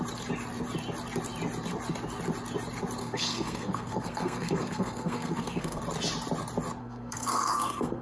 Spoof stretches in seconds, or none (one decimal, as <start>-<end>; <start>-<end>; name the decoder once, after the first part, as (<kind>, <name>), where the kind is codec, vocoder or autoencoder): 3.0-5.8 (codec, SNAC); 6.8-8.0